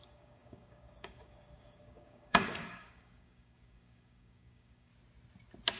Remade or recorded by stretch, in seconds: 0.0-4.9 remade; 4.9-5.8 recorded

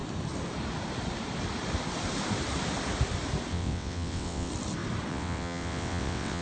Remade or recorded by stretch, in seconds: 0.0-3.5 recorded; 3.5-4.5 remade; 4.5-5.1 recorded; 5.1-6.4 remade

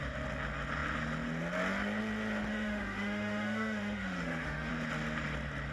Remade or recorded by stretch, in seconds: 0.0-2.5 recorded; 2.5-4.7 remade; 4.7-5.7 recorded